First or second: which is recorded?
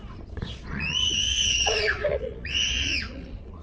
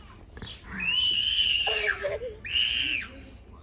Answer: second